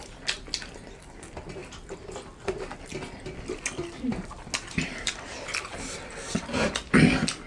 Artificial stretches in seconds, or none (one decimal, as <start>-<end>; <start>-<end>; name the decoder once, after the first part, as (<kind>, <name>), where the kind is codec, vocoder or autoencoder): none